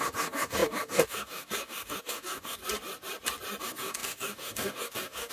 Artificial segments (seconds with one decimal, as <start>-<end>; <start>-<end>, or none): 0.0-2.6; 3.6-5.3